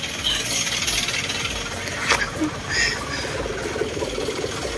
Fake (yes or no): no